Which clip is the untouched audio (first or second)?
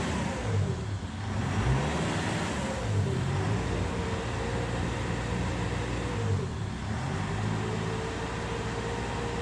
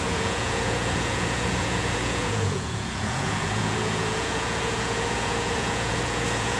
first